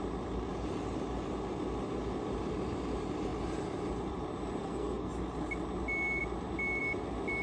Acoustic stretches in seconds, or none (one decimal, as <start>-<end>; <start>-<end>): 0.0-4.6; 5.1-7.4